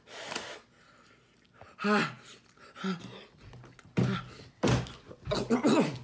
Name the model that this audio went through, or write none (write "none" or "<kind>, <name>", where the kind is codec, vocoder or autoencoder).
none